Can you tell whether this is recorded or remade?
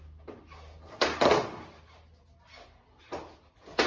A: recorded